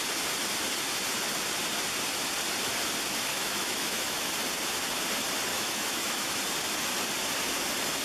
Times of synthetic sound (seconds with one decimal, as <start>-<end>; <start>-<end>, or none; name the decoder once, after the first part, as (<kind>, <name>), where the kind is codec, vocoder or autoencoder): 3.3-4.3 (autoencoder, DAC-VAE); 5.5-6.4